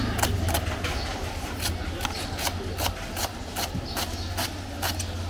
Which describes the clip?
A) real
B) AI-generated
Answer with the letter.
A